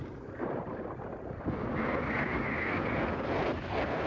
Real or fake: real